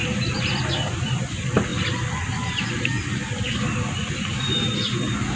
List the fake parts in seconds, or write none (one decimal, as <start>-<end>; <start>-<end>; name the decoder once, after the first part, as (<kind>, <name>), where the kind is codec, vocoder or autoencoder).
0.0-1.2 (vocoder, BigVGAN v2); 1.7-2.8